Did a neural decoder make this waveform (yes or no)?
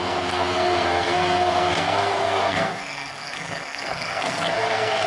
yes